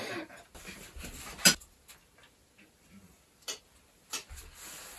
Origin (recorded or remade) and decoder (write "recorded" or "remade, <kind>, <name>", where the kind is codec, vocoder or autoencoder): recorded